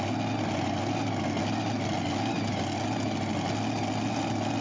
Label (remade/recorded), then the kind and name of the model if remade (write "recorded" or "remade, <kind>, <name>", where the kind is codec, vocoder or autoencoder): recorded